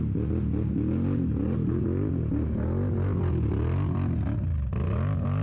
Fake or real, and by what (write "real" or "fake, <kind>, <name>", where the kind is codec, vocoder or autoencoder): real